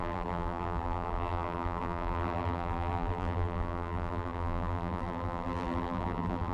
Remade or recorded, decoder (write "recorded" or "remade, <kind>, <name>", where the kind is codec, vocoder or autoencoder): remade, vocoder, BigVGAN v2